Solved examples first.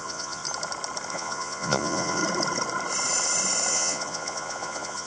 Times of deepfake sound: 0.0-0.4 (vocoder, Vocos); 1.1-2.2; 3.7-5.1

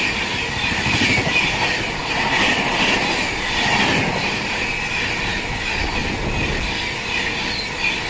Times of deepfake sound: none

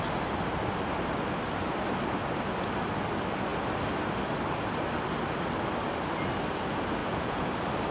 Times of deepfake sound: 7.0-7.5 (vocoder, Vocos)